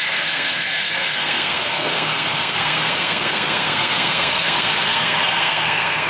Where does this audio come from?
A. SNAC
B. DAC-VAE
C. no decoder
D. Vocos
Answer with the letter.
A